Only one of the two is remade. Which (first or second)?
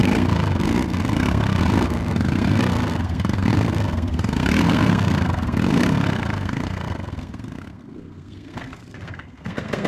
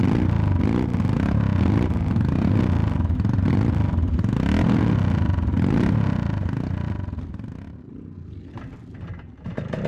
first